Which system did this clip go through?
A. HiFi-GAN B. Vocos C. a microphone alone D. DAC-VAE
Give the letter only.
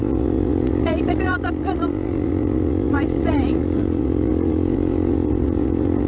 B